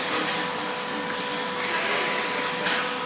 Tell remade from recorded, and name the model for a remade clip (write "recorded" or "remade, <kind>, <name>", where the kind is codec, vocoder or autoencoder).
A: recorded